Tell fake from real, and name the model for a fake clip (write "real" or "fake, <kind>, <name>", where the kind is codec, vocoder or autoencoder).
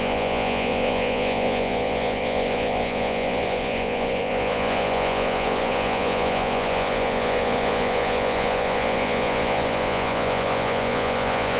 fake, vocoder, Vocos